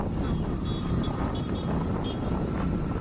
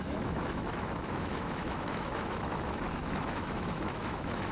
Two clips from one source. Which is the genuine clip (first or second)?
first